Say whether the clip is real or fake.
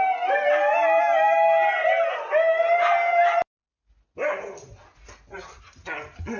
real